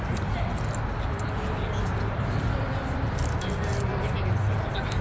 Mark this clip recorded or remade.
recorded